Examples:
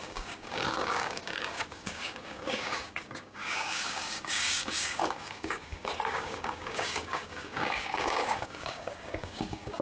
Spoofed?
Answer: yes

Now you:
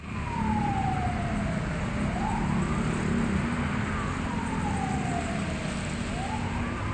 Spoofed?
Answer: no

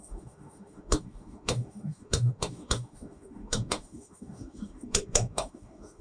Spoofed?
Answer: yes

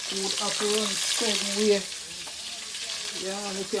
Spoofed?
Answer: no